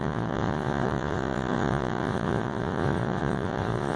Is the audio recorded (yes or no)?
no